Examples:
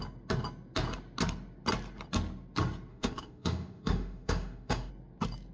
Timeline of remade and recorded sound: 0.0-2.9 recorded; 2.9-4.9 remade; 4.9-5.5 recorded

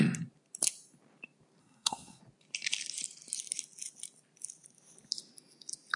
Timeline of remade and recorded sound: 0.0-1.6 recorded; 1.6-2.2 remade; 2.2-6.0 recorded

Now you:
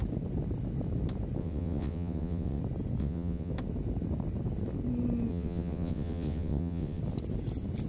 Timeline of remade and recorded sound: 0.0-1.4 recorded; 1.4-2.6 remade; 2.6-3.0 recorded; 3.0-3.5 remade; 3.5-5.3 recorded; 5.3-7.0 remade; 7.0-7.9 recorded